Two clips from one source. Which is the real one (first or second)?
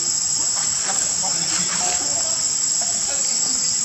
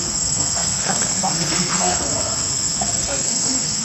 first